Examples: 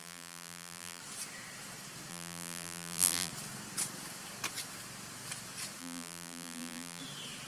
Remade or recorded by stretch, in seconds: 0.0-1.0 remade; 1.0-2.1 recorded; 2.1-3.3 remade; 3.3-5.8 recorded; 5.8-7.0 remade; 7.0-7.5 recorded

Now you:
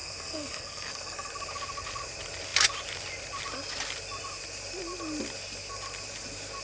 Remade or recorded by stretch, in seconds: 0.0-1.3 remade; 1.3-6.6 recorded

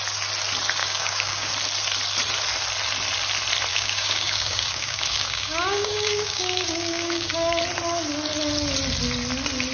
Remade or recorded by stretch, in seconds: 0.0-0.8 recorded; 0.8-1.5 remade; 1.5-3.7 recorded; 3.7-7.6 remade; 7.6-9.7 recorded